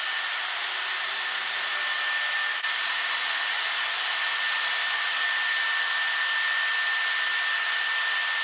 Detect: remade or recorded recorded